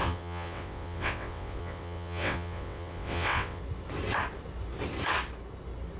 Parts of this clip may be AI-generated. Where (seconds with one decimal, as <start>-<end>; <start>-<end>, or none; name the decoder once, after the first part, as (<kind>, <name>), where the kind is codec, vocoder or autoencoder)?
0.0-3.6 (vocoder, WaveNeXt)